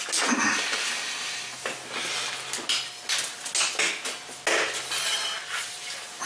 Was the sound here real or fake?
real